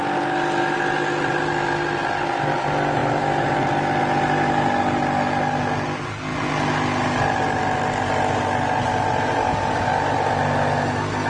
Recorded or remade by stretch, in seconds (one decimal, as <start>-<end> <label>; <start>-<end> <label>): 0.0-11.3 recorded